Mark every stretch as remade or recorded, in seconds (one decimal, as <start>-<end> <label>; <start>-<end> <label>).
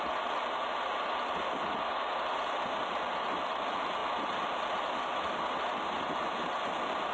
0.0-7.1 recorded